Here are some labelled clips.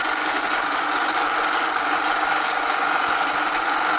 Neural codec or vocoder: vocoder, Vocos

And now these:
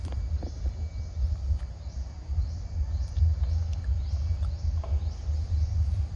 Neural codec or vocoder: none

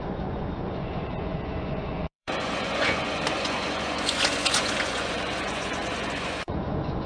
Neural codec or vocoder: vocoder, Vocos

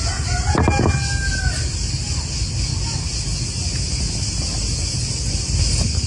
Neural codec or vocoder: none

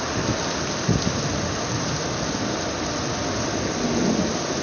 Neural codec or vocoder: none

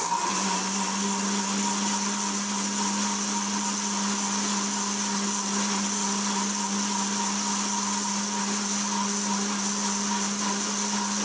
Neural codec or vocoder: none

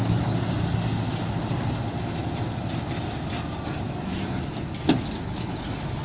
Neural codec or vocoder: none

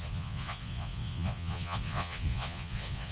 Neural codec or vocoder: vocoder, Vocos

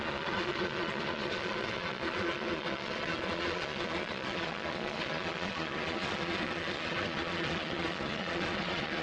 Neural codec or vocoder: vocoder, Vocos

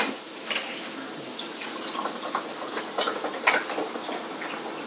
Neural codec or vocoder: none